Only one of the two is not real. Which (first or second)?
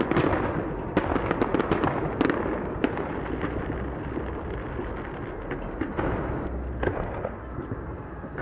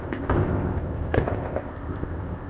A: second